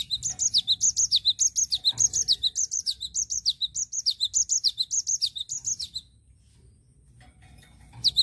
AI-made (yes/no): no